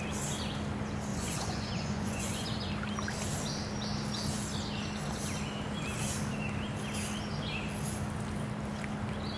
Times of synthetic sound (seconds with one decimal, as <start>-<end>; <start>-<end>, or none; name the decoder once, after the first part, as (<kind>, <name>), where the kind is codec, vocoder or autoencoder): 1.1-2.7 (vocoder, Vocos)